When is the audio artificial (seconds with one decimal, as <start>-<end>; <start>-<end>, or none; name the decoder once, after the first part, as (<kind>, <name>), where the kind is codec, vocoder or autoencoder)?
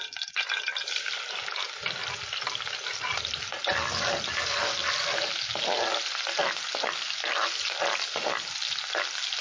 none